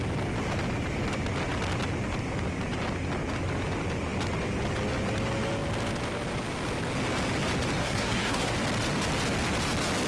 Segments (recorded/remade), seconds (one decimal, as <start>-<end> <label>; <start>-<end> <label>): 0.0-7.8 recorded; 7.8-8.5 remade; 8.5-10.1 recorded